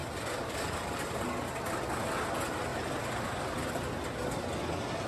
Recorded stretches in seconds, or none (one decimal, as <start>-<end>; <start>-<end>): 1.2-2.7; 3.7-5.1